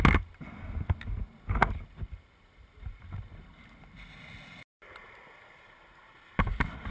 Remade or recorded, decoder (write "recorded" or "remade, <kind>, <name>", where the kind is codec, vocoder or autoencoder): recorded